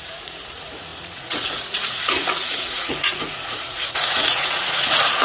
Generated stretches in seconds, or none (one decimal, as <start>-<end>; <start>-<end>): 0.0-5.2